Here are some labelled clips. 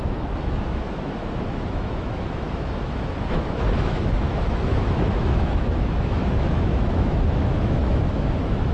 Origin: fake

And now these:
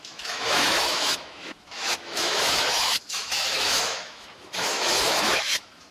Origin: fake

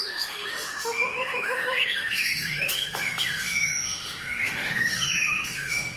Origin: fake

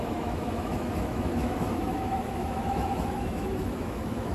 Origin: fake